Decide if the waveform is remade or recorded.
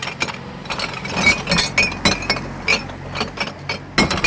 recorded